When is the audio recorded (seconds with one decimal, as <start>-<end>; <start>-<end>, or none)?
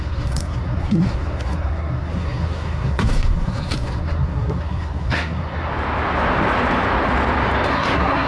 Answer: 5.7-7.7